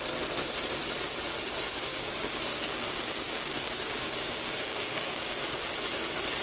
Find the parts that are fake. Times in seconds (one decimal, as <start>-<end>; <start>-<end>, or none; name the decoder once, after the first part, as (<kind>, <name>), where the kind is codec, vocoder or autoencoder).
1.9-5.4 (codec, DAC)